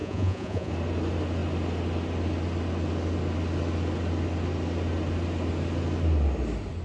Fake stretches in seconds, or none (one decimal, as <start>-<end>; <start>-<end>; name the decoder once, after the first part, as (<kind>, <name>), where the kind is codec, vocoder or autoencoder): 0.0-0.7 (vocoder, Vocos)